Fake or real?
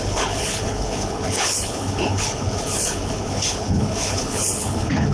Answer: fake